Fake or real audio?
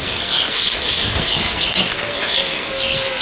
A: fake